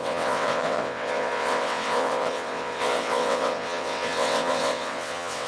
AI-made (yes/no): yes